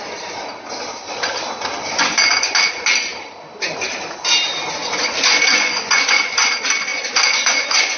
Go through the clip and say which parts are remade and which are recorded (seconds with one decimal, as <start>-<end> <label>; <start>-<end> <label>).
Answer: 0.0-1.9 recorded; 1.9-2.6 remade; 2.6-4.8 recorded; 4.8-6.5 remade; 6.5-6.9 recorded; 6.9-8.0 remade